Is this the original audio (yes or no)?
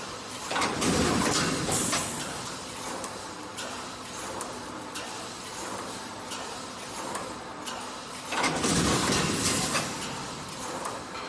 no